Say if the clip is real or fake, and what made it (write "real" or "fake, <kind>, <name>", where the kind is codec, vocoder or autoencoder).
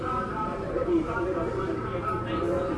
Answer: real